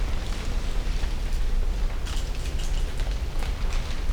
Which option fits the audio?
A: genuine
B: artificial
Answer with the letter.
A